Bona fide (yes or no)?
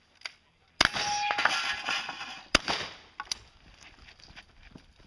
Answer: yes